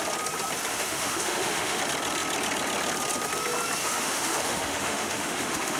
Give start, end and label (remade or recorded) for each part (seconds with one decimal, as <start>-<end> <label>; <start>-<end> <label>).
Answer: 0.0-0.7 recorded; 0.7-1.8 remade; 1.8-3.8 recorded; 3.8-5.8 remade